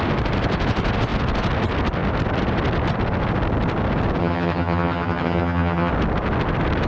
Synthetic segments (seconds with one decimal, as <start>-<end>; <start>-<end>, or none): 4.2-5.9